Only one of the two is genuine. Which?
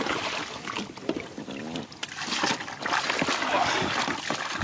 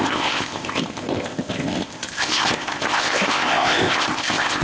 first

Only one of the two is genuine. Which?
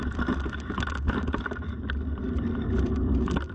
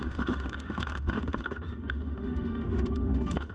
first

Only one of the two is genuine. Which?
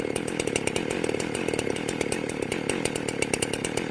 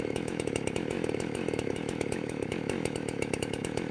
first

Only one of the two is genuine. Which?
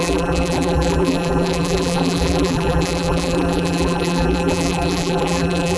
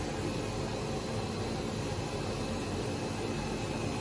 second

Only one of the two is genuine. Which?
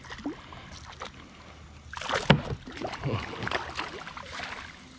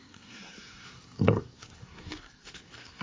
first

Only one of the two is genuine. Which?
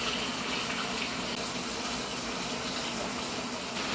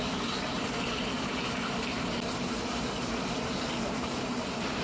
first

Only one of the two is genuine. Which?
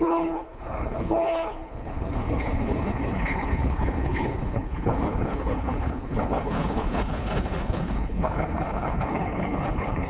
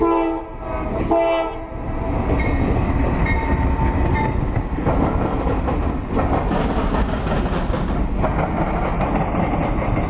second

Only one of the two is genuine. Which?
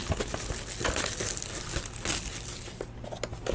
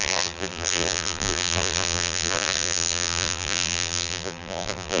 first